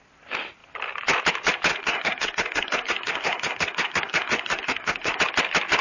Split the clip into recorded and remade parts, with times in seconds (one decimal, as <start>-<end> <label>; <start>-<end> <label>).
0.0-1.7 recorded; 1.7-5.2 remade; 5.2-5.8 recorded